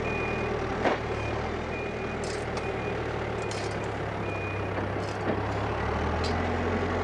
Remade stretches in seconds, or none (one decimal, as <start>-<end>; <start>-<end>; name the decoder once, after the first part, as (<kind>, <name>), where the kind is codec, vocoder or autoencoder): 0.7-1.3 (vocoder, BigVGAN v2)